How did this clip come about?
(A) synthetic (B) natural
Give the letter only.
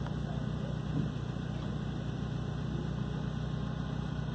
B